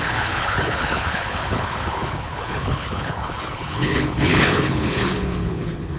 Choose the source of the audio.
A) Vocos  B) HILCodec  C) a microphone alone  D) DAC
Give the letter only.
B